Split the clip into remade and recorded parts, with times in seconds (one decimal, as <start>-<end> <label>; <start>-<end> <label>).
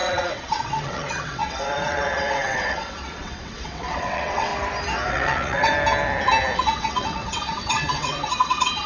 0.0-4.5 remade; 4.5-5.1 recorded; 5.1-5.7 remade; 5.7-6.6 recorded; 6.6-8.9 remade